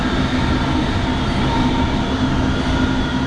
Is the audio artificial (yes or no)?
no